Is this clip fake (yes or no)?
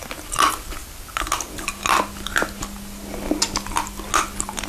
no